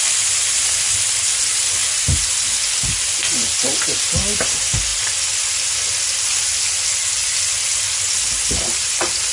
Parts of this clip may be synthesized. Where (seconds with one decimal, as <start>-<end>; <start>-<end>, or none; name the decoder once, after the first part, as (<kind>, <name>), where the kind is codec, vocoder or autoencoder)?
none